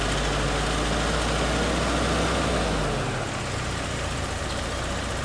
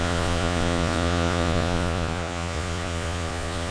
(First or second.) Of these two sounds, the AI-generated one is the second